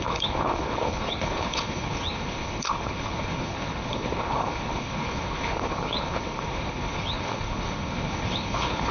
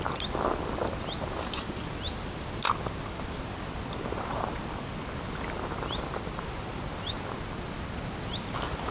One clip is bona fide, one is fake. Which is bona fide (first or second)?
second